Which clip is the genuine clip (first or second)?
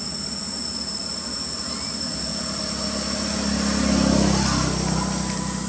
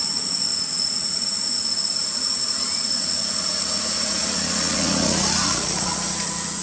first